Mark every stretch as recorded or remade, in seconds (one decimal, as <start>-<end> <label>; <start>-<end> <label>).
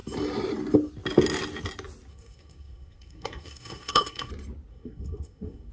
0.0-2.1 recorded; 2.1-4.3 remade; 4.3-4.7 recorded; 4.7-5.7 remade